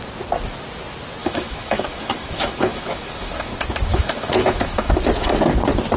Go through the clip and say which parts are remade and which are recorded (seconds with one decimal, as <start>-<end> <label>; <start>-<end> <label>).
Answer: 0.0-1.2 recorded; 1.2-3.5 remade; 3.5-3.9 recorded; 3.9-4.9 remade; 4.9-6.0 recorded